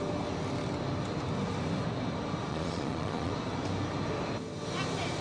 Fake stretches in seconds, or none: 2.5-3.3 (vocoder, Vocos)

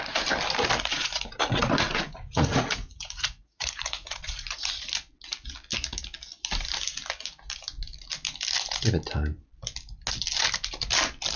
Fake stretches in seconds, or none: 0.9-4.7 (vocoder, Vocos)

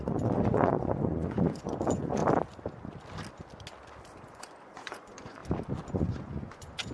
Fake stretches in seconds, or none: 0.0-2.2 (vocoder, Vocos); 4.2-5.4; 5.9-6.9

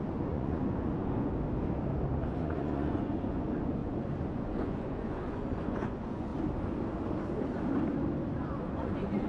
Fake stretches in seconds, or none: 0.0-1.3 (vocoder, Vocos); 2.4-6.3; 8.7-9.3

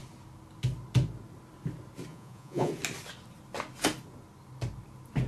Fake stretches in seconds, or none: 2.1-2.7 (vocoder, Vocos)

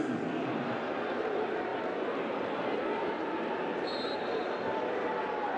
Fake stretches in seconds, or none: none